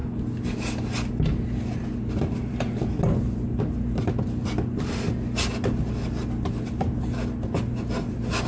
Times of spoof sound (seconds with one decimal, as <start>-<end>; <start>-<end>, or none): none